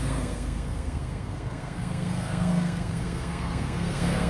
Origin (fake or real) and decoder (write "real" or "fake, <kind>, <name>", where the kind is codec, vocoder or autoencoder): fake, codec, SNAC